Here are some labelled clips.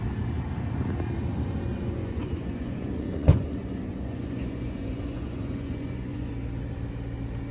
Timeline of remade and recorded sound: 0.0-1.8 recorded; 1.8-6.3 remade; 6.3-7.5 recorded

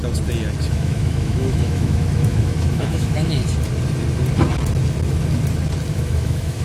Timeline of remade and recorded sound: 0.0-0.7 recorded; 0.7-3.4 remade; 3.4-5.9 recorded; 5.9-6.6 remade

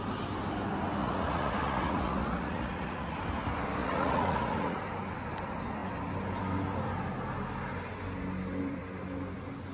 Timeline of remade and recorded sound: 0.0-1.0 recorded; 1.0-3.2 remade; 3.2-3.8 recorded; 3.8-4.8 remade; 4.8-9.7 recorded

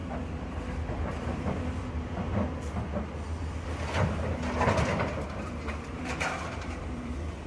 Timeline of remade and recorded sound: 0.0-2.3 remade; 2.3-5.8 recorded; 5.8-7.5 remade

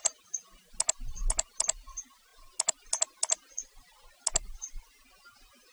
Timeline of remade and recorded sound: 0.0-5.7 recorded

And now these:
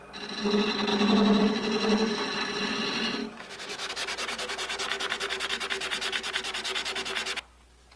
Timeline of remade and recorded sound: 0.0-0.9 recorded; 0.9-1.4 remade; 1.4-3.2 recorded; 3.2-3.9 remade; 3.9-8.0 recorded

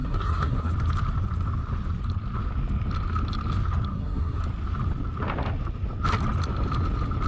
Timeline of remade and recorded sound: 0.0-0.7 remade; 0.7-3.9 recorded; 3.9-4.4 remade; 4.4-7.3 recorded